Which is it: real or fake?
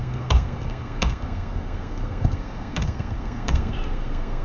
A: fake